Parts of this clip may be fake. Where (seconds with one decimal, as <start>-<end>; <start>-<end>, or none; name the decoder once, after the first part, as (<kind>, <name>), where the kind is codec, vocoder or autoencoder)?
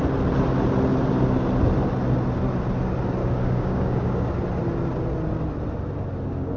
3.2-4.3 (codec, DAC)